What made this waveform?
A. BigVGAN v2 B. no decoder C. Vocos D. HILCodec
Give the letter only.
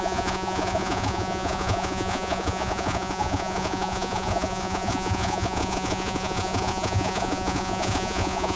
C